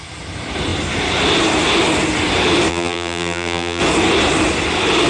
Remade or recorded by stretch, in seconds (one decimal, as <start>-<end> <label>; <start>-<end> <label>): 0.0-2.7 recorded; 2.7-3.8 remade; 3.8-5.1 recorded